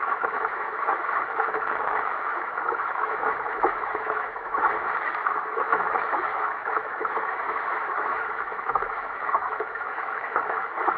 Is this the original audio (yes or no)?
no